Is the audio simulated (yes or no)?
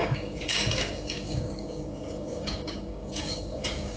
yes